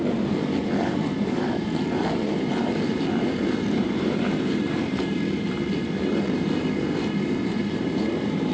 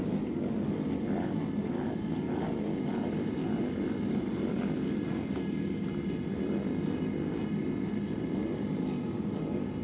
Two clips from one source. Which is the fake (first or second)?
first